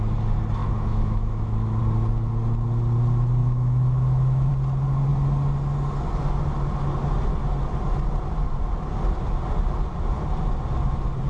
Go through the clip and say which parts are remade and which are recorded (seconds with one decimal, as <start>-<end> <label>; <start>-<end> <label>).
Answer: 0.0-0.6 recorded; 0.6-1.8 remade; 1.8-3.4 recorded; 3.4-4.5 remade; 4.5-11.3 recorded